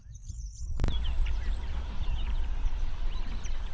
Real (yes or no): no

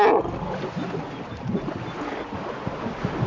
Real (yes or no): yes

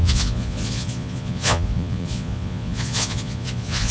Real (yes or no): no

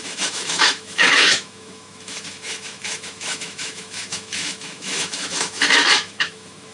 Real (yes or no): no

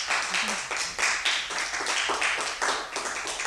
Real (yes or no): yes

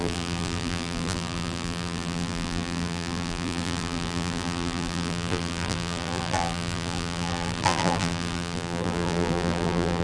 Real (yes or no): no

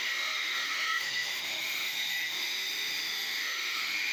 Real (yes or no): no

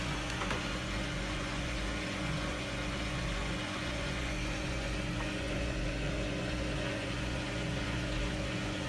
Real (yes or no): no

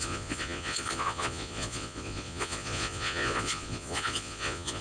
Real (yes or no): no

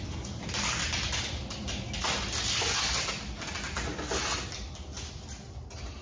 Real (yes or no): yes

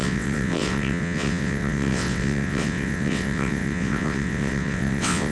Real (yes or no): no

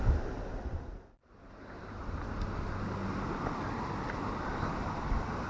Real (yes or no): yes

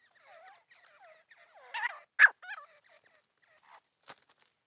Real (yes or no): yes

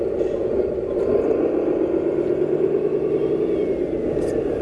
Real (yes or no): yes